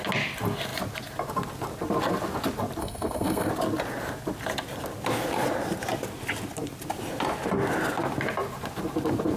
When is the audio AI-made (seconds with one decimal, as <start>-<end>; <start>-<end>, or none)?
2.8-3.5